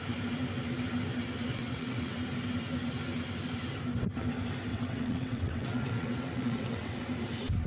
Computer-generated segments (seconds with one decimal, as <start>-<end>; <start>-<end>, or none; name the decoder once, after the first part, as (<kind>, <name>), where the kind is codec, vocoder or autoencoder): 1.5-2.1 (vocoder, WaveNeXt); 4.7-7.0